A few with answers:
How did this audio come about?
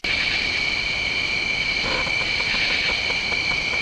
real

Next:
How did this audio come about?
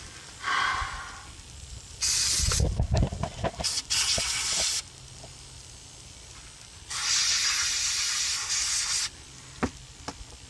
real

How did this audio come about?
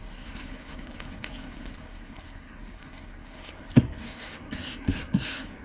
fake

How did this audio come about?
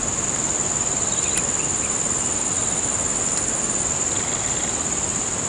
real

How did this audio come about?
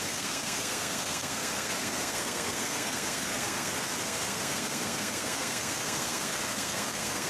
fake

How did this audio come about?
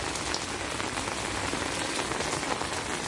real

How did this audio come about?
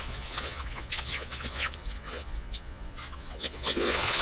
fake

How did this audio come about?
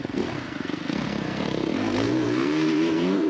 fake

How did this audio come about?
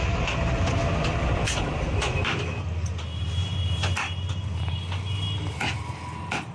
real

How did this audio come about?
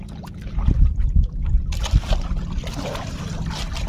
real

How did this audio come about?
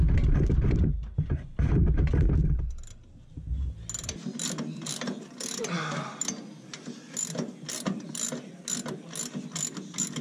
real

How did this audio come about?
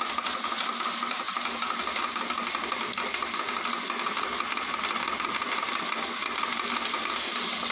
real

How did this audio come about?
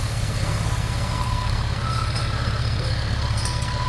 fake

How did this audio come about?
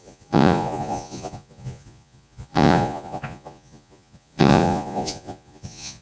fake